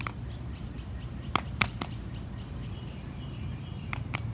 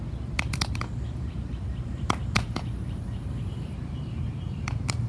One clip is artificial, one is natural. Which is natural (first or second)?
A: first